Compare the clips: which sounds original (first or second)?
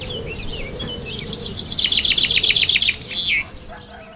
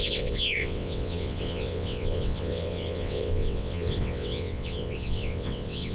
first